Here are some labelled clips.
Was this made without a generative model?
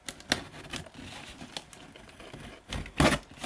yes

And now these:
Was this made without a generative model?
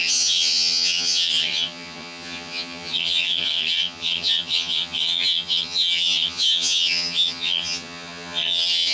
no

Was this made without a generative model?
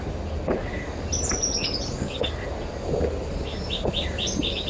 yes